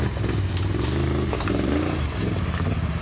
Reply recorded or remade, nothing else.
remade